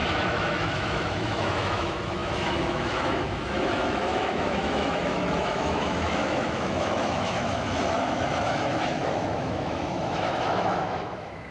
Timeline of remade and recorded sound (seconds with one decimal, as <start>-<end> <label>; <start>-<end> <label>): 0.0-11.5 remade